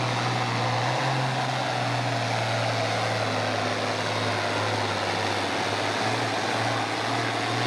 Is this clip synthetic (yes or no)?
no